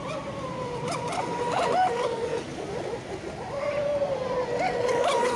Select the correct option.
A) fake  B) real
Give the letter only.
B